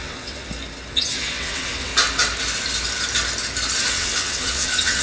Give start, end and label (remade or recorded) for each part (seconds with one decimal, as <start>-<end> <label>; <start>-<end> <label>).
0.0-0.4 remade; 0.4-0.9 recorded; 0.9-1.9 remade; 1.9-3.9 recorded; 3.9-5.0 remade